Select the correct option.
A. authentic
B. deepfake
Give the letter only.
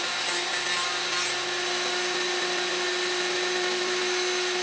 A